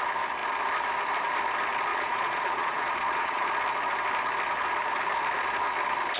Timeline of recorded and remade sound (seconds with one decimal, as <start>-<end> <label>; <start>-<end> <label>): 0.0-1.9 recorded; 1.9-3.5 remade; 3.5-6.2 recorded